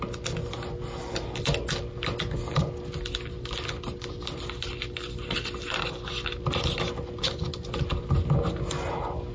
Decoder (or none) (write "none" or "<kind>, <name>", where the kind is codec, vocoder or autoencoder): none